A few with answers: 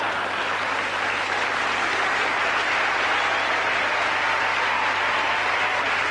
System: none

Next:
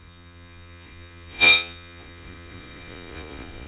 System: vocoder, Vocos